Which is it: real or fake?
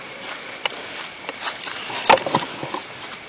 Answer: real